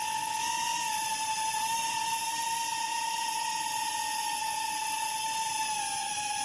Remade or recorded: recorded